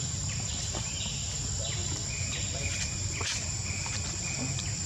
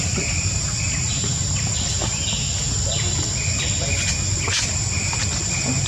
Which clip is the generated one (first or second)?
first